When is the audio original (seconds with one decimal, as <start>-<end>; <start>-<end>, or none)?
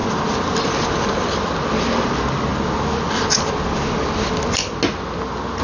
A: 0.0-5.6